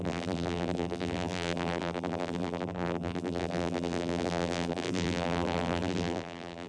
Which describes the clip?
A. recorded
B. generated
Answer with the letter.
B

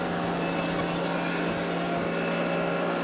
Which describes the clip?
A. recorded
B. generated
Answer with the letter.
A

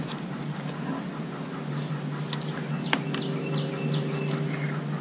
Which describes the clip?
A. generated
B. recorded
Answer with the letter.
B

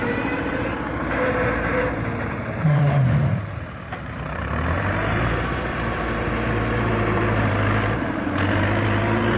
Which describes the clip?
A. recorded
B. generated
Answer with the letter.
B